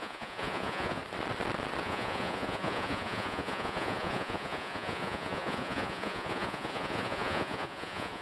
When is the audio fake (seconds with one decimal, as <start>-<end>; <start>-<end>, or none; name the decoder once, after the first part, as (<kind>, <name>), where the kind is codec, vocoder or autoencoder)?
0.0-1.0 (vocoder, Vocos); 1.8-8.2